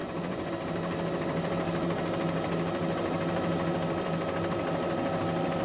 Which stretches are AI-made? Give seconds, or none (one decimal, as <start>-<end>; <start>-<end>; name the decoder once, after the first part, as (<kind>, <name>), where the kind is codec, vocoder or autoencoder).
0.0-0.5 (vocoder, Vocos)